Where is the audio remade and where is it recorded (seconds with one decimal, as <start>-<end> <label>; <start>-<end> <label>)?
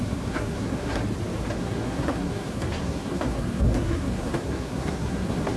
0.0-1.0 remade; 1.0-1.6 recorded; 1.6-5.6 remade